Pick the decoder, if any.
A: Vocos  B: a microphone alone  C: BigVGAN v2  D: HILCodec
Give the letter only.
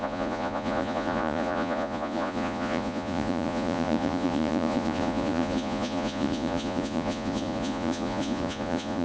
A